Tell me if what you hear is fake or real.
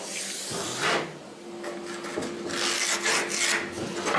real